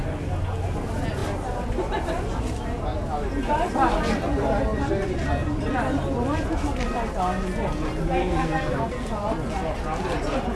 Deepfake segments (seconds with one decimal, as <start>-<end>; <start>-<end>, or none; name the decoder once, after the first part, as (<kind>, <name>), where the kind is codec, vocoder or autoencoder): 8.2-9.1 (codec, SNAC)